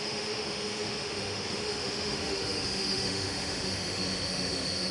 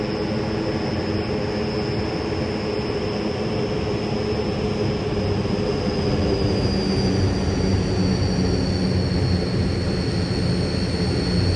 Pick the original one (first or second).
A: second